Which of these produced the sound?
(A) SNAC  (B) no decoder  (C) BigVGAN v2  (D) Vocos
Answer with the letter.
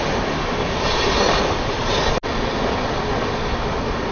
B